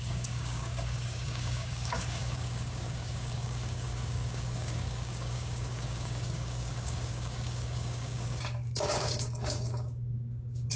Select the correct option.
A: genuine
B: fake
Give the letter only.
B